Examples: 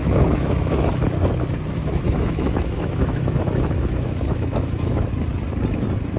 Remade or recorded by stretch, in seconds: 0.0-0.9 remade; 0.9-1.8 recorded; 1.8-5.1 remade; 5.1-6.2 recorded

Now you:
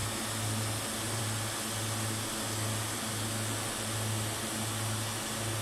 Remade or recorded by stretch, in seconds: 0.0-5.6 recorded

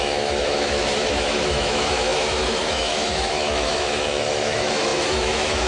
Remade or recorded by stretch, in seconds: 0.0-5.7 remade